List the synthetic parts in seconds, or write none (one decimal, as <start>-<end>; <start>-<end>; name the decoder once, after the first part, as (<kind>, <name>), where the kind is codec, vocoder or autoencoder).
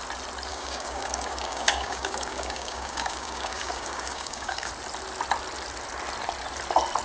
0.5-4.7 (codec, DAC)